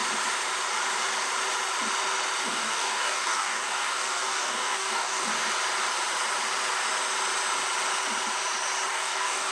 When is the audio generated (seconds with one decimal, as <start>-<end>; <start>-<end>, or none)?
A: 2.4-5.3; 8.9-9.5